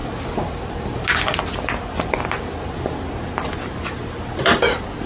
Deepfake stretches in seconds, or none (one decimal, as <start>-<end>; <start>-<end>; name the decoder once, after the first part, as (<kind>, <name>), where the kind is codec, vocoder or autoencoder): none